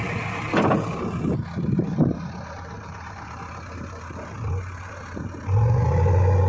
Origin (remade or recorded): recorded